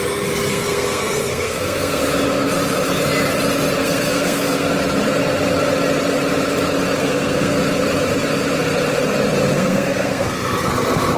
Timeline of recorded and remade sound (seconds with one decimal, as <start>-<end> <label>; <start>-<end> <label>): 0.0-0.5 recorded; 0.5-2.0 remade; 2.0-3.8 recorded; 3.8-4.7 remade; 4.7-7.0 recorded; 7.0-7.6 remade; 7.6-9.5 recorded; 9.5-10.7 remade; 10.7-11.2 recorded